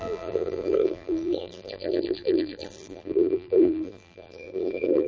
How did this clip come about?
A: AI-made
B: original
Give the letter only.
A